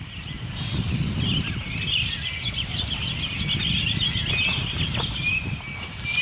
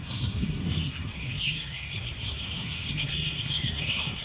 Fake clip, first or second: second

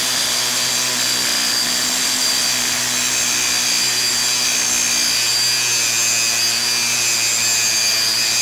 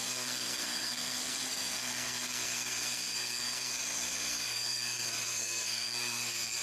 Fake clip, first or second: second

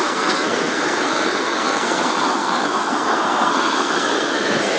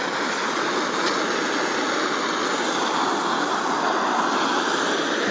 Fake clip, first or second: first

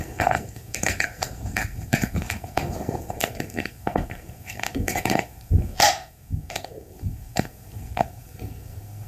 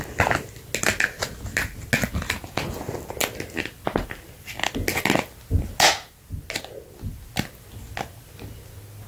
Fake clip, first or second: first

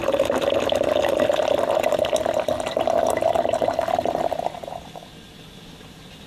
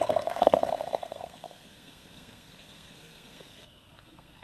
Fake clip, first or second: second